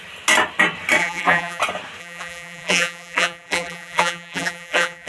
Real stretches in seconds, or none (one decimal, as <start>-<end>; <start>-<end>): 0.0-1.0; 1.6-2.0